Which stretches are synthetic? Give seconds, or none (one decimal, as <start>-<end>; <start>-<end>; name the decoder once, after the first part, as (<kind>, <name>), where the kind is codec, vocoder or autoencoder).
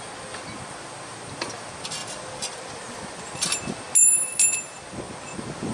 2.0-3.8 (vocoder, BigVGAN v2)